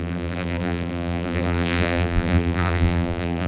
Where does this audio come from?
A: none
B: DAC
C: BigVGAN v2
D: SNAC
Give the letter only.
C